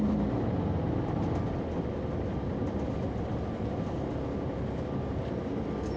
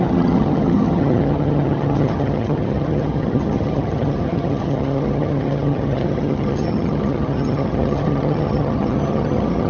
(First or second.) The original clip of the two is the first